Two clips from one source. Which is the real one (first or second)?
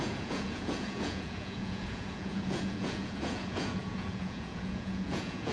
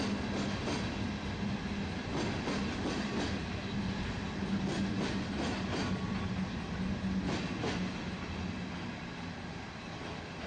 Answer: second